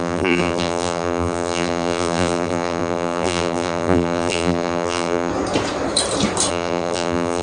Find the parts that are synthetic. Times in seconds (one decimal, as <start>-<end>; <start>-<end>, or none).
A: 0.0-5.3; 6.5-7.4

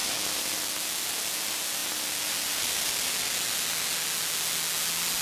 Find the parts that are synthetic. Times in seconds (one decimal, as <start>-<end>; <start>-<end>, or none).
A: none

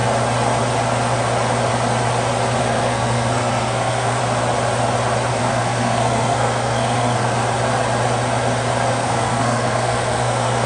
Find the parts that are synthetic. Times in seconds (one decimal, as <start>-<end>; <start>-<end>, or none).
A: 2.6-4.2; 5.4-7.4; 8.9-10.7

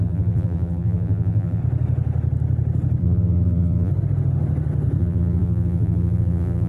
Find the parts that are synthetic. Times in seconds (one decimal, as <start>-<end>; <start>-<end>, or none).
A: 0.0-1.6; 3.0-3.9; 5.0-6.7

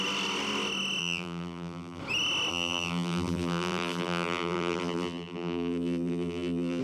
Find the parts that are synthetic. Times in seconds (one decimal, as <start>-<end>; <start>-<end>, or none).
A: 1.0-2.0; 2.5-6.8

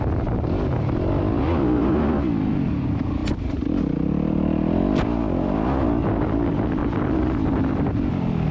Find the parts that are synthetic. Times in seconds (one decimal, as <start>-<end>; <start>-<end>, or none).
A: 6.8-8.5

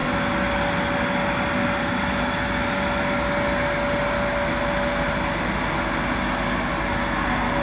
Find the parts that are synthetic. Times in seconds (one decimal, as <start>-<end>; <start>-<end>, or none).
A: none